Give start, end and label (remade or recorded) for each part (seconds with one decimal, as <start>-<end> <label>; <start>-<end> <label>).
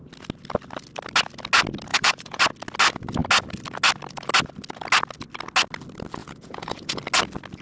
0.0-1.9 recorded; 1.9-2.4 remade; 2.4-6.2 recorded; 6.2-7.0 remade; 7.0-7.6 recorded